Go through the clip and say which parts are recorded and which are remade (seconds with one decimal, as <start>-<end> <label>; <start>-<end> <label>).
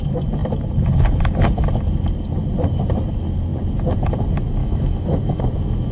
0.0-4.6 recorded; 4.6-5.4 remade; 5.4-5.9 recorded